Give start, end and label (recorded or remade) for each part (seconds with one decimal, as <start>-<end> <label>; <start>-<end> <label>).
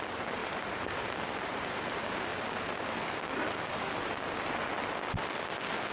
0.0-2.3 remade; 2.3-5.9 recorded